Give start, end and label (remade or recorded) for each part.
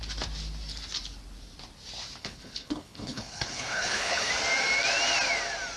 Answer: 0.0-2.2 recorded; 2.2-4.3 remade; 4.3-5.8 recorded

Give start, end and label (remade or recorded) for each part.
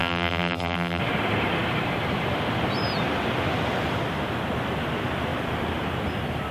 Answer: 0.0-1.0 remade; 1.0-6.5 recorded